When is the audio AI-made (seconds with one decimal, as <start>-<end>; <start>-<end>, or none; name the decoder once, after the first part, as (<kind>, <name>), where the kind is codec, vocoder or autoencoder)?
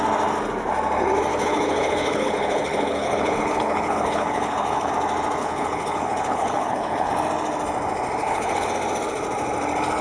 1.3-4.9 (codec, HILCodec); 5.4-7.1; 8.2-8.7